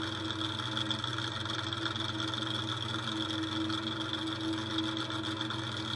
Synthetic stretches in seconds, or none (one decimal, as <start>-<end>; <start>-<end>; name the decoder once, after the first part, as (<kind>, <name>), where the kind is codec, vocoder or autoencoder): none